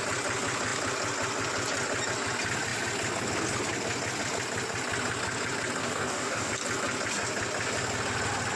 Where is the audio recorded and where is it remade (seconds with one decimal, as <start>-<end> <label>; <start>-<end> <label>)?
0.0-5.8 recorded; 5.8-6.5 remade; 6.5-8.6 recorded